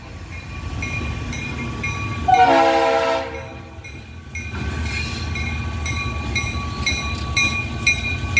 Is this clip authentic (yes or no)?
yes